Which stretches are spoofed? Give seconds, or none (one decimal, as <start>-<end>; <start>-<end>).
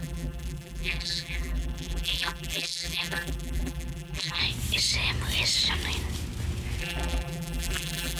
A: 0.0-4.4; 6.8-8.2